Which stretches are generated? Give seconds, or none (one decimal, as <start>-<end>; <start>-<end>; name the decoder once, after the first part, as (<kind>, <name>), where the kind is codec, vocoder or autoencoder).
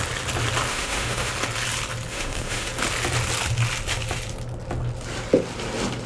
0.7-1.3 (autoencoder, DAC-VAE); 2.1-2.7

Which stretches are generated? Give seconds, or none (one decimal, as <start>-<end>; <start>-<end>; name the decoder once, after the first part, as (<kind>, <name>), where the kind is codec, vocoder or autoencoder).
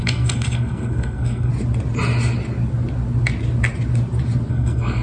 0.0-1.5 (codec, SNAC); 4.5-5.0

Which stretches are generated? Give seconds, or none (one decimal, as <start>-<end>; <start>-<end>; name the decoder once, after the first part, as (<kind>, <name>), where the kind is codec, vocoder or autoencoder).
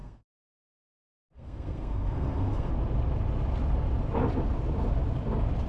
0.0-2.7 (codec, SNAC)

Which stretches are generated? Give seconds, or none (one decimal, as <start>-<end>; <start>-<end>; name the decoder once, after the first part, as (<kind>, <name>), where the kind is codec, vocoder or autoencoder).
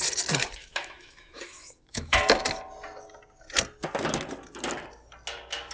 0.6-2.2 (autoencoder, DAC-VAE)